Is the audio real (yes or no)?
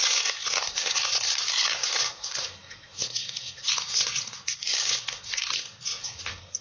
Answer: no